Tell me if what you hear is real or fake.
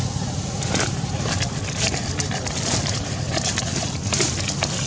real